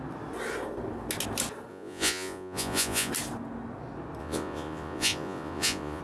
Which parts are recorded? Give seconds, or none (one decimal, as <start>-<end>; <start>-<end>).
0.0-1.7; 3.1-4.2